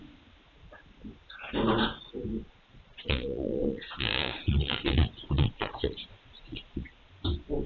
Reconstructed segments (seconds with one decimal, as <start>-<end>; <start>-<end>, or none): 2.5-7.1